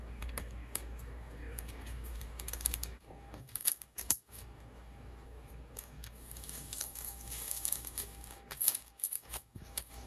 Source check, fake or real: fake